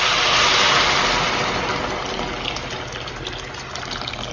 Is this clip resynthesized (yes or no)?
no